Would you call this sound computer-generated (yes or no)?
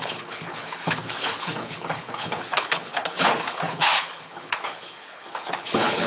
yes